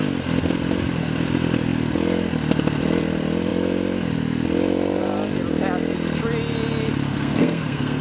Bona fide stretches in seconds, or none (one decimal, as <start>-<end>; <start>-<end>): 0.0-7.1